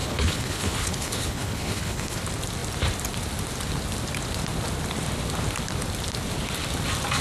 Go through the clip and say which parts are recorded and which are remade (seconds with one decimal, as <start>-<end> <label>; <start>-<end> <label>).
0.0-2.2 remade; 2.2-7.2 recorded